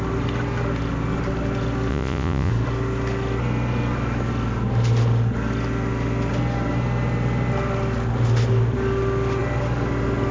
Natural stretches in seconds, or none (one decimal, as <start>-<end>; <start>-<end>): 0.0-1.9; 2.5-10.3